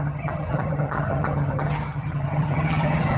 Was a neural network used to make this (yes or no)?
yes